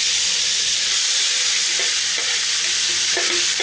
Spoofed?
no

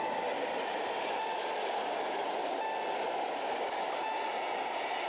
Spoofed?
no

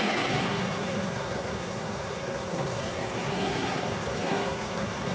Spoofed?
yes